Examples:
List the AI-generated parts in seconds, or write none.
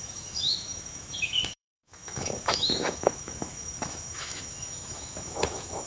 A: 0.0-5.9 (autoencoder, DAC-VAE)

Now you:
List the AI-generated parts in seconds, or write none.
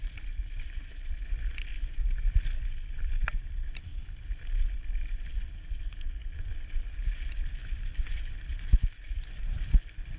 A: 0.0-3.9 (vocoder, BigVGAN v2); 8.8-10.2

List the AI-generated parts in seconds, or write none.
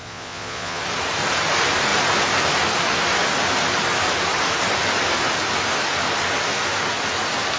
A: 0.0-0.8 (vocoder, Vocos)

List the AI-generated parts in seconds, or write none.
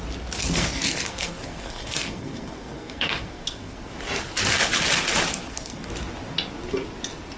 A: 0.4-3.9 (codec, SNAC); 5.3-5.9